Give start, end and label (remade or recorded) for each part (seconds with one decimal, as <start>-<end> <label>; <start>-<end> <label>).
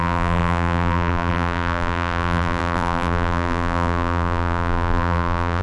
0.0-5.6 remade